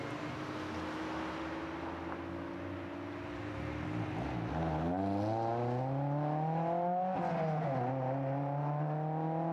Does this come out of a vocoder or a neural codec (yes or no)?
no